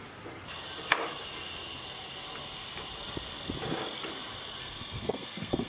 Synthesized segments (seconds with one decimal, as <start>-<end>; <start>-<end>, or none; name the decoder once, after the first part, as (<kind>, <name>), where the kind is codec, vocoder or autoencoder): 4.6-5.7 (codec, SNAC)